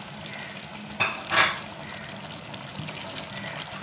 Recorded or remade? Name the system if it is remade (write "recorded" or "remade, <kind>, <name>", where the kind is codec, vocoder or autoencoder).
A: recorded